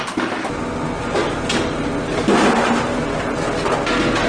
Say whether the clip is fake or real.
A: real